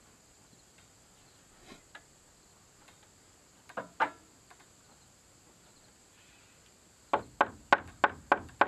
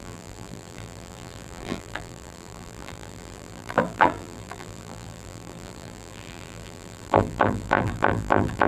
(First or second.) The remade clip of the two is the second